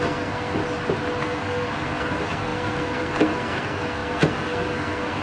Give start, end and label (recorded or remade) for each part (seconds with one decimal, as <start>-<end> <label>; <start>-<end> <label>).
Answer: 0.0-0.6 remade; 0.6-1.2 recorded; 1.2-5.2 remade